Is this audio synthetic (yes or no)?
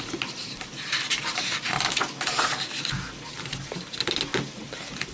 no